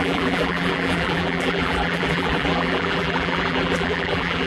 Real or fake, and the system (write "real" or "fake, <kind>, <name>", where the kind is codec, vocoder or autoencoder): fake, vocoder, BigVGAN v2